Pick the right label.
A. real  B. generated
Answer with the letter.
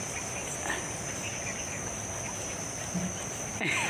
A